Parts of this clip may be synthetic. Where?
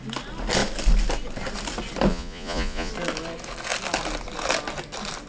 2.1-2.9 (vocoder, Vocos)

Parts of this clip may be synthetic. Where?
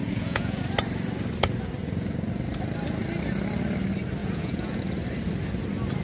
0.0-0.6 (vocoder, Vocos); 4.2-4.8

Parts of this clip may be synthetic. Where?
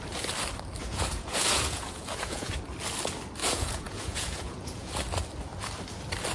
0.8-2.5 (vocoder, Vocos); 3.4-4.9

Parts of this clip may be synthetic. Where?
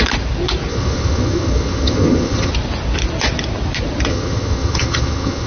0.7-2.5 (vocoder, HiFi-GAN); 4.1-5.5